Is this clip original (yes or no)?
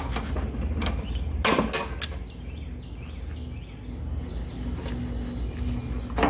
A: yes